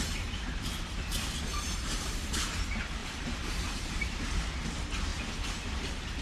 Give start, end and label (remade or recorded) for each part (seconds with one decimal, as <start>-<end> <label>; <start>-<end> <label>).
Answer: 0.0-1.5 recorded; 1.5-2.4 remade; 2.4-3.0 recorded; 3.0-4.5 remade; 4.5-6.2 recorded